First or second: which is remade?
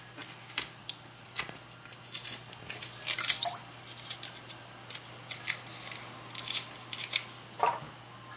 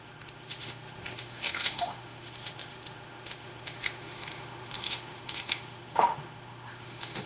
second